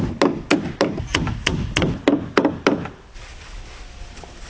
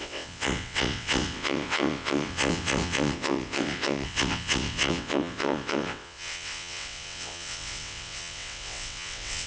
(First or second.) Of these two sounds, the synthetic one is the second